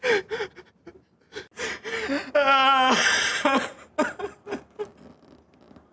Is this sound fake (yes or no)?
no